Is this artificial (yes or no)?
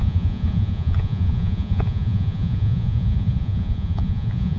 yes